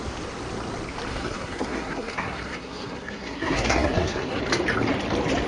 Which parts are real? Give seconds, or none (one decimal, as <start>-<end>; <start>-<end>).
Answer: 0.0-1.1; 4.4-5.5